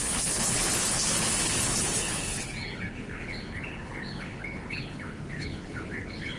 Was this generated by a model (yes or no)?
yes